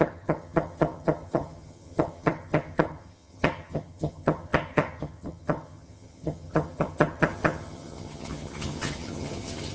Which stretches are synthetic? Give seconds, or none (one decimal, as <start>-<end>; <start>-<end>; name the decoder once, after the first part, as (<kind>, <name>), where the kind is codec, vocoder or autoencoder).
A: 0.0-9.7 (vocoder, HiFi-GAN)